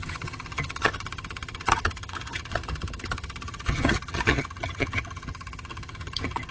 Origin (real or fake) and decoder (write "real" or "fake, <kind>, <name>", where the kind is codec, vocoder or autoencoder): fake, vocoder, HiFi-GAN